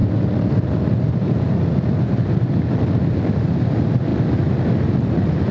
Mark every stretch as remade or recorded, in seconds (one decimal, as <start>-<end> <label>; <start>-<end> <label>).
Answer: 0.0-4.1 remade; 4.1-4.9 recorded; 4.9-5.5 remade